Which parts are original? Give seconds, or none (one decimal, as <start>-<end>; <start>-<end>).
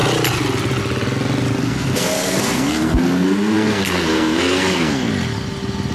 0.0-1.6; 5.1-5.9